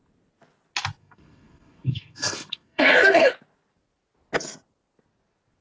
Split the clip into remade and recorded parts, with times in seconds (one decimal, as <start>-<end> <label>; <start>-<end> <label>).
0.0-1.0 recorded; 1.0-3.3 remade; 3.3-5.6 recorded